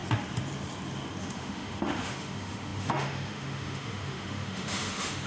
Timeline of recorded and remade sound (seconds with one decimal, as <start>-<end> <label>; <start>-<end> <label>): 0.0-1.2 recorded; 1.2-5.3 remade